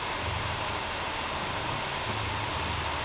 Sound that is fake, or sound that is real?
real